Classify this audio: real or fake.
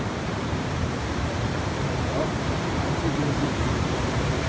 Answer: fake